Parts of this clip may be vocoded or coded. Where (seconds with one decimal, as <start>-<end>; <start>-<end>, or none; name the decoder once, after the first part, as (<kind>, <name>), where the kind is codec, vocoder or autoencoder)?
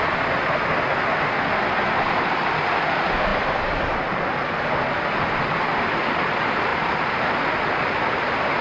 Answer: none